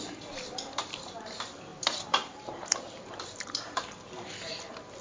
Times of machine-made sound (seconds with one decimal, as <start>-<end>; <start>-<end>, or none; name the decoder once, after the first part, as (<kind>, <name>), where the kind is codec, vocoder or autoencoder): 1.7-4.3 (vocoder, BigVGAN v2)